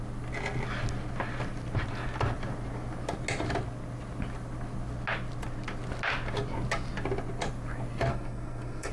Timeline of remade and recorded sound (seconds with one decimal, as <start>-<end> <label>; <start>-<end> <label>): 0.0-8.1 recorded; 8.1-8.9 remade